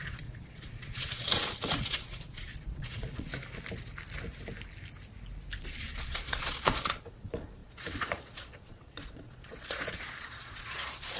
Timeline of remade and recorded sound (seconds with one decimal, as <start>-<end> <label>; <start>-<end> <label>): 0.0-3.3 remade; 3.3-5.6 recorded; 5.6-11.2 remade